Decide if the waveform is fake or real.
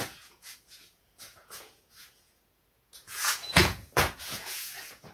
fake